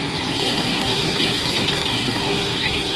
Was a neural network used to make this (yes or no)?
yes